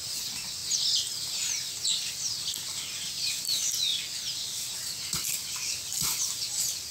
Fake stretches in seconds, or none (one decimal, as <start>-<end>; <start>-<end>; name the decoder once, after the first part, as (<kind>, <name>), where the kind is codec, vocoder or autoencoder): none